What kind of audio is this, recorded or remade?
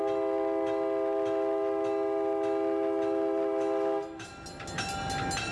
recorded